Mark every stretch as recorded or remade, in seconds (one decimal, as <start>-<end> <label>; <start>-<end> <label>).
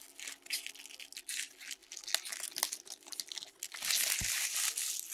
0.0-5.1 recorded